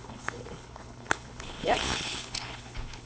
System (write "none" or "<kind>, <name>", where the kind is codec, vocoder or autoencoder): codec, HILCodec